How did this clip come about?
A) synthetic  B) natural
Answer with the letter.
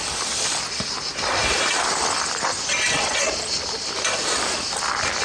B